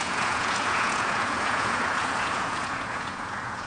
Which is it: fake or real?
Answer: fake